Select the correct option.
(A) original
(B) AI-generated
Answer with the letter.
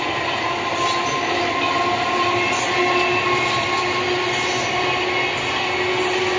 A